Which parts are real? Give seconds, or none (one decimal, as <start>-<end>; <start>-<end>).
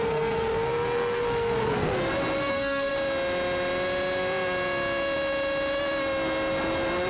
1.9-2.5; 2.9-7.1